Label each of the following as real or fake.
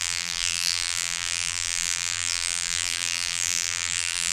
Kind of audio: fake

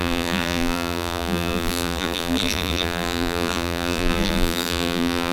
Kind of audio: fake